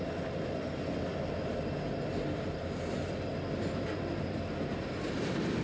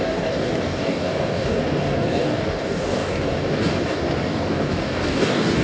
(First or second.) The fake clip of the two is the second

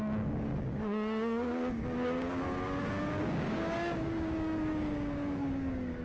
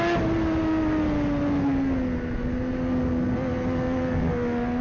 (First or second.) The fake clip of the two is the first